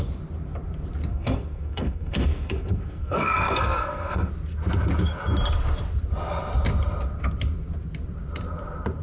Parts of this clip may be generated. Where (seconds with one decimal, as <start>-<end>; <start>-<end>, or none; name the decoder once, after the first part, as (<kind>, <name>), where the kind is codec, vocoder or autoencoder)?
1.1-4.3 (codec, SNAC)